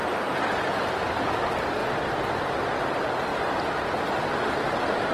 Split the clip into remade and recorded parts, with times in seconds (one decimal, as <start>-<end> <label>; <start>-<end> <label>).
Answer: 0.0-5.1 recorded